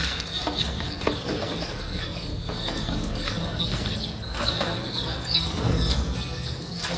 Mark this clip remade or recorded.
remade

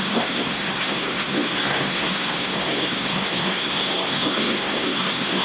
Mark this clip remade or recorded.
remade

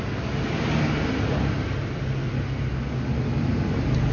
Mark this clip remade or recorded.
recorded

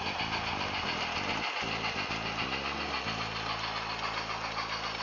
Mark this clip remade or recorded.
recorded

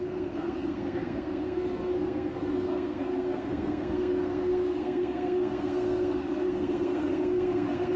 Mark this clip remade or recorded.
remade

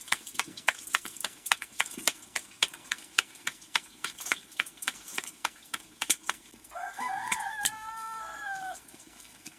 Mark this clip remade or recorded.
remade